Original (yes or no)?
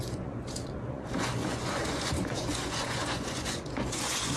no